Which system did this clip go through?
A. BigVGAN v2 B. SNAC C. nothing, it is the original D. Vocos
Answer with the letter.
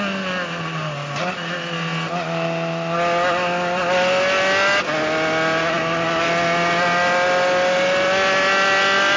C